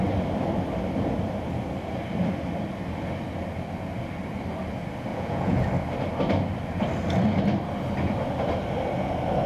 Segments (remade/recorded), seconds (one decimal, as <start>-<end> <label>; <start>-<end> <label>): 0.0-5.1 recorded; 5.1-5.7 remade; 5.7-9.5 recorded